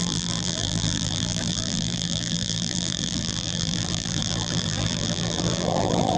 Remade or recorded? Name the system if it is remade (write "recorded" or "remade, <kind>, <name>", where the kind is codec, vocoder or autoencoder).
remade, vocoder, BigVGAN v2